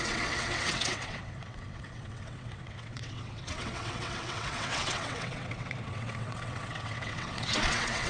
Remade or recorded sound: remade